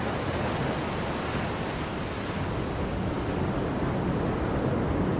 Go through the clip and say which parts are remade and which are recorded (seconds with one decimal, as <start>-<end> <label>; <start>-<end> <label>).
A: 0.0-5.2 recorded